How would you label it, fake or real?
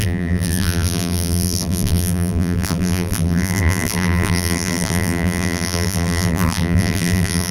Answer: fake